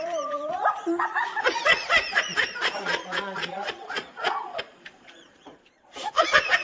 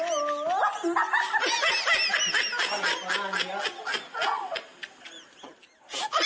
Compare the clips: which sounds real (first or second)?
second